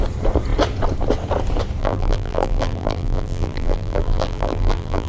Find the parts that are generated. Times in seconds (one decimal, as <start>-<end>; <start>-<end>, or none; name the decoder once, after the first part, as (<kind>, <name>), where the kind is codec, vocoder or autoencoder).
1.8-5.1 (vocoder, BigVGAN v2)